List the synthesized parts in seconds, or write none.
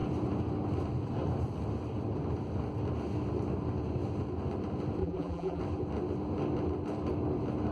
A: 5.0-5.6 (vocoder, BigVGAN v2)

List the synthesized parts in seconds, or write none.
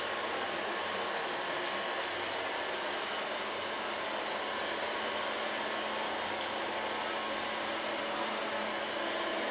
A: none